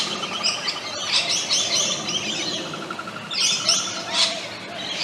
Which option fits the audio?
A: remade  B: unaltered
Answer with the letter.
B